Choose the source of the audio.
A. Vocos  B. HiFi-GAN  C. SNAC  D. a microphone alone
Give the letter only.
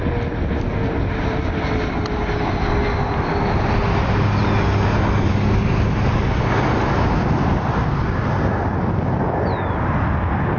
D